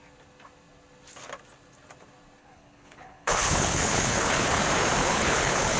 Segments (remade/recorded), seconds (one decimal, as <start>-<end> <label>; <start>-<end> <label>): 0.0-2.4 recorded; 2.4-4.6 remade; 4.6-5.0 recorded; 5.0-5.8 remade